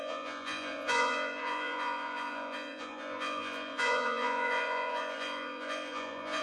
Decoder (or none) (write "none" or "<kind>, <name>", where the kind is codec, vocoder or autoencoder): vocoder, Vocos